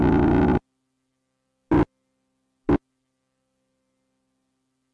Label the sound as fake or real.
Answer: real